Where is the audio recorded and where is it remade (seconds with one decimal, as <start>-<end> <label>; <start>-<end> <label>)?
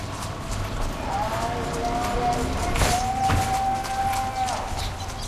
0.0-5.3 recorded